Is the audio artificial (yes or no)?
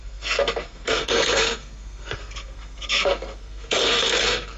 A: yes